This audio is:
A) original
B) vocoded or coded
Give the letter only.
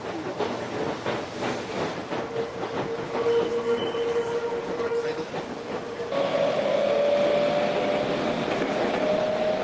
A